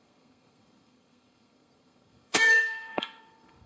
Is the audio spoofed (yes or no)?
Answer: yes